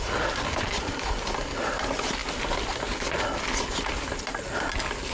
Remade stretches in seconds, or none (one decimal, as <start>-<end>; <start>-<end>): none